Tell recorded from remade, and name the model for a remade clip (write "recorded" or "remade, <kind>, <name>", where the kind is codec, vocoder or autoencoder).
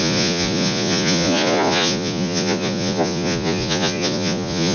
remade, vocoder, Vocos